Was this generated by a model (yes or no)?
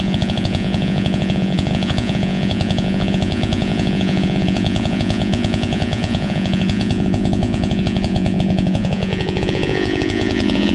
yes